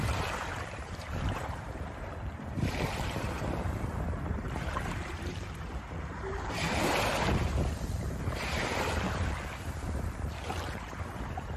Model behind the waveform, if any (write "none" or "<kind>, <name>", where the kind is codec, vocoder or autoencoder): vocoder, BigVGAN v2